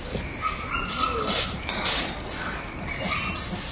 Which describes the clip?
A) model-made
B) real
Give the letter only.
B